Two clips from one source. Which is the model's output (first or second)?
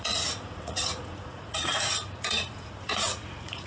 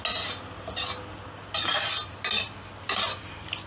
first